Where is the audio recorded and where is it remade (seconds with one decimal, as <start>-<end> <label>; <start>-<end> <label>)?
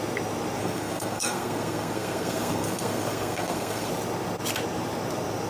0.0-0.6 recorded; 0.6-3.9 remade; 3.9-5.5 recorded